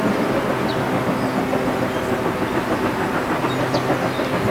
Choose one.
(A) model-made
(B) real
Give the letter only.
B